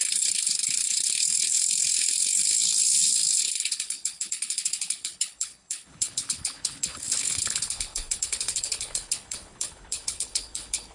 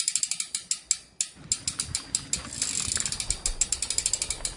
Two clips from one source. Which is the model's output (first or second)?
first